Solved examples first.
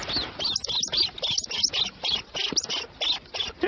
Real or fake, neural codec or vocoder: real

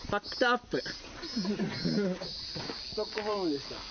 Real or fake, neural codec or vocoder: real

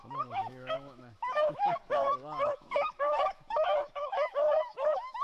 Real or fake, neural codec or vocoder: fake, autoencoder, DAC-VAE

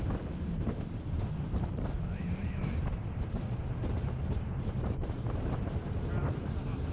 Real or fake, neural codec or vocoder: fake, vocoder, BigVGAN v2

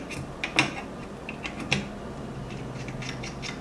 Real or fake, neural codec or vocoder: real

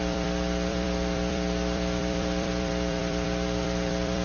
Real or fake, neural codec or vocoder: fake, vocoder, BigVGAN v2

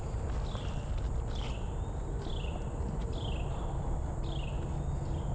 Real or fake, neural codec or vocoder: real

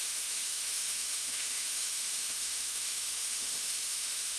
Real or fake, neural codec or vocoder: fake, autoencoder, DAC-VAE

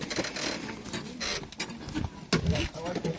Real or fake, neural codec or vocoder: real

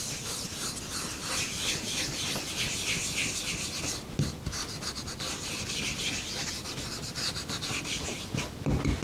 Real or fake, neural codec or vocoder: real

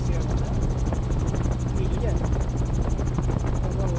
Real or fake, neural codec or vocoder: real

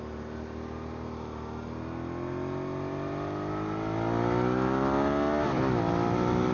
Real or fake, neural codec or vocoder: real